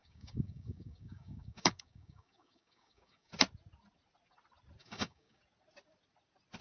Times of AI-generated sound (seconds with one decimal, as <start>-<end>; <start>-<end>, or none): 0.0-3.3; 4.8-5.4